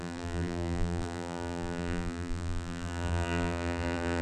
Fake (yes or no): yes